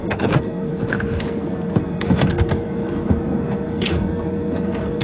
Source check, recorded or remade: remade